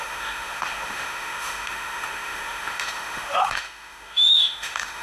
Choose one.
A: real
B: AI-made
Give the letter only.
B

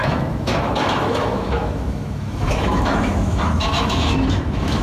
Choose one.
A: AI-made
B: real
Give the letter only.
A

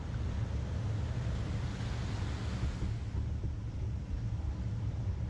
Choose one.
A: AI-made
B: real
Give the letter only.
B